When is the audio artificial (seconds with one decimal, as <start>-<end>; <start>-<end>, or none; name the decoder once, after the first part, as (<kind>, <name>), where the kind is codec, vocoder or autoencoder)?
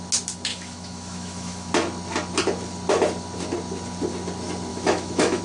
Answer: 0.5-1.7 (autoencoder, DAC-VAE); 4.7-5.4